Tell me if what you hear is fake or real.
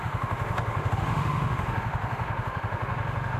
fake